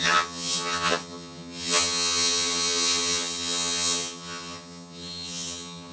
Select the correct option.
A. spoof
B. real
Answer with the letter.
A